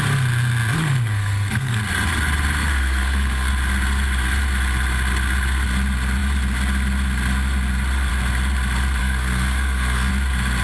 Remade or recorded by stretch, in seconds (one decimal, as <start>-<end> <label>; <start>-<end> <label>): 0.0-0.8 recorded; 0.8-1.8 remade; 1.8-2.6 recorded; 2.6-3.5 remade; 3.5-9.0 recorded; 9.0-10.1 remade; 10.1-10.6 recorded